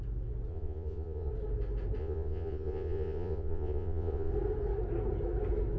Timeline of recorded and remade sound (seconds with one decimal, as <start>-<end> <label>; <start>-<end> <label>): 0.0-0.5 recorded; 0.5-1.3 remade; 1.3-2.0 recorded; 2.0-4.3 remade; 4.3-5.8 recorded